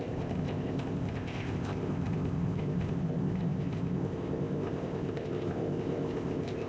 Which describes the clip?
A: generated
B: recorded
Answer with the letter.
A